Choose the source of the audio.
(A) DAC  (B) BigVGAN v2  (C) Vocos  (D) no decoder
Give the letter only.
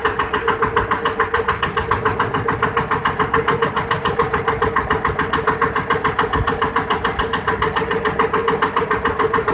D